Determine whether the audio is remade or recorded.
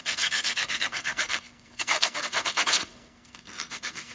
remade